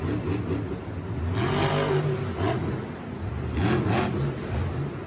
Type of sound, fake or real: real